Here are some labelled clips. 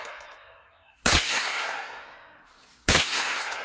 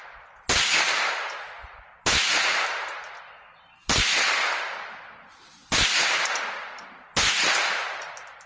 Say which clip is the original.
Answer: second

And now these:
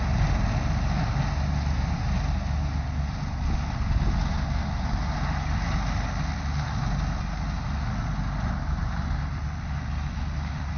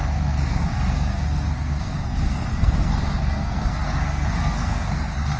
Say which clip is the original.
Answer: first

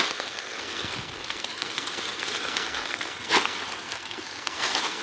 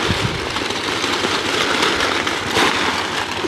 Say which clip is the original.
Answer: second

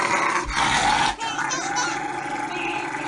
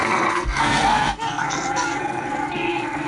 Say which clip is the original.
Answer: first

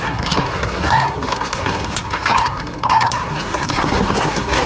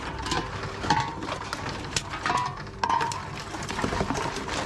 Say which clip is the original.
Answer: second